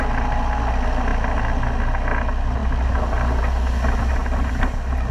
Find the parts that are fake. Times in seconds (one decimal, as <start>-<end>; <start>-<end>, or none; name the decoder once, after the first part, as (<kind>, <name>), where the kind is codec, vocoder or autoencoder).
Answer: none